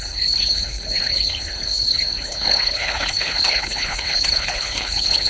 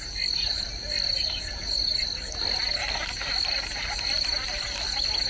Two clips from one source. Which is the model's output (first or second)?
first